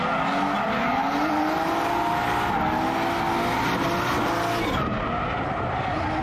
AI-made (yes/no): no